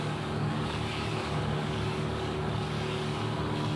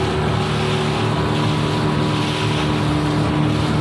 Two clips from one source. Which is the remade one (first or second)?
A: first